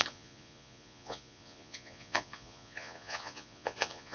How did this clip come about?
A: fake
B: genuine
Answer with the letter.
A